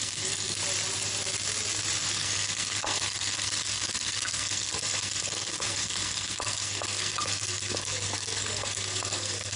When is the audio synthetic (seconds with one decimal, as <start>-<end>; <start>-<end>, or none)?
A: 0.0-0.6; 2.1-9.6